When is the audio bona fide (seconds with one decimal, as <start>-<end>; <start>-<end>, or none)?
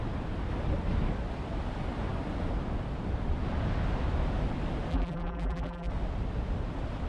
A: 0.0-4.9; 5.9-7.1